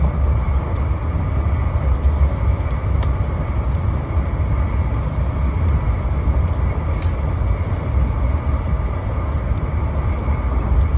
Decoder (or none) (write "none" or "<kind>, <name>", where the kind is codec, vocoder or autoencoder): none